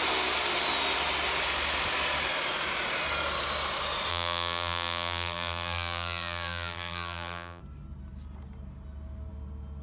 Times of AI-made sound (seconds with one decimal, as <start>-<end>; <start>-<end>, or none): 4.1-7.6